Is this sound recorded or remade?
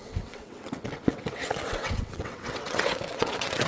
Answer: remade